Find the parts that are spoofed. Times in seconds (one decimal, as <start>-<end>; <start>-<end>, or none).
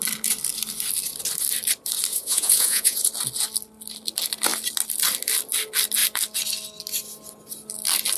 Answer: 2.1-3.1